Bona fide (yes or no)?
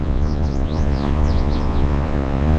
no